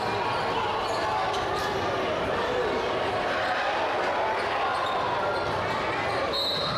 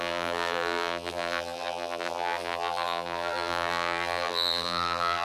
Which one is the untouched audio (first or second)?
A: first